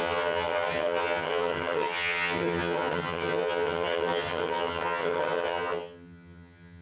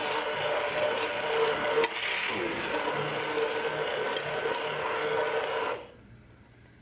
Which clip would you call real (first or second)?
second